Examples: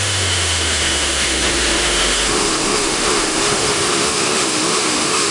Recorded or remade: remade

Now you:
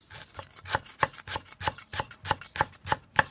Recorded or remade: recorded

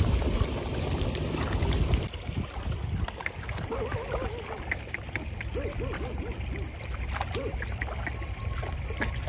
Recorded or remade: remade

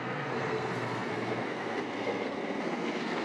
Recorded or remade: remade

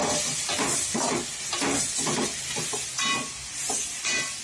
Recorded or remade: recorded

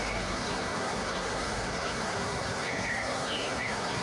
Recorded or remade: remade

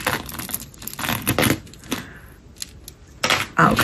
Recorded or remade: recorded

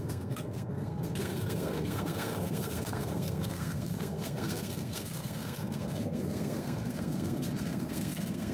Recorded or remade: remade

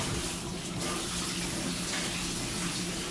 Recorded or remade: recorded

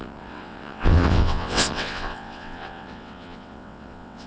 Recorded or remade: remade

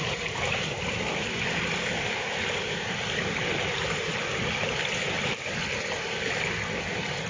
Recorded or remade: recorded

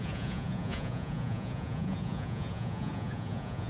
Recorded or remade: remade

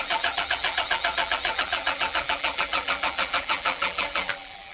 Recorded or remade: remade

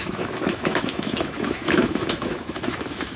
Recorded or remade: remade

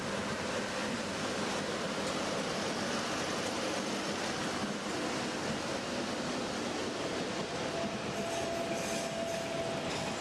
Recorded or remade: recorded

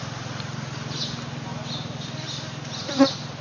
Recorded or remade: recorded